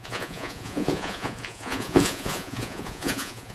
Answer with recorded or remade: remade